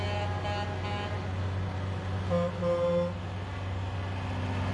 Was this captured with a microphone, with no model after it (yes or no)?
yes